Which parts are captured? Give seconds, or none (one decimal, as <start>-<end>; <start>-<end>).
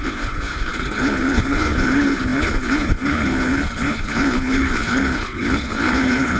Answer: none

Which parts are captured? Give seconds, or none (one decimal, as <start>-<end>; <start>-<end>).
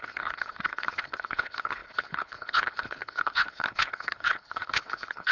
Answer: none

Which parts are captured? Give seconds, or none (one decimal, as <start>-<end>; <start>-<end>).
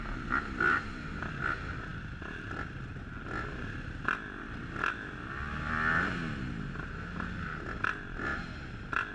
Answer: 0.0-9.1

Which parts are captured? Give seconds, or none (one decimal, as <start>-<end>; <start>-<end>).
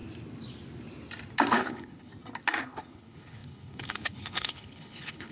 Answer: 0.0-1.5; 2.1-2.6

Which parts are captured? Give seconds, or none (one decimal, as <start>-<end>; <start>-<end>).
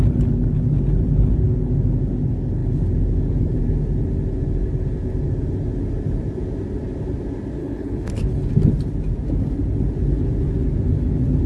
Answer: 0.0-7.6; 8.5-11.5